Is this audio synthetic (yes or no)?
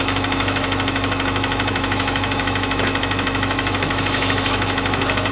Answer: yes